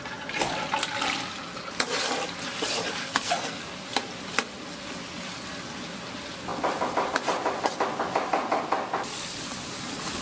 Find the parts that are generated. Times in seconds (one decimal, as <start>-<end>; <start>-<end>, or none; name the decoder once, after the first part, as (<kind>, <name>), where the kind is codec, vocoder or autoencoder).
3.0-3.6 (codec, SNAC)